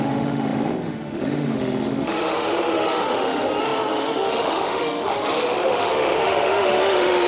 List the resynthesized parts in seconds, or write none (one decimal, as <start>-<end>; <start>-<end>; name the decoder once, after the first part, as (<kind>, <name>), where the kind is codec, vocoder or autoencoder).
0.0-7.3 (autoencoder, DAC-VAE)